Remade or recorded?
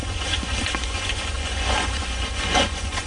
remade